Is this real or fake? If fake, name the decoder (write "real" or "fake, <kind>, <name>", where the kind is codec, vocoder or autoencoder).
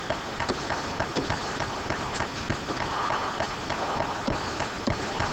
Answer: real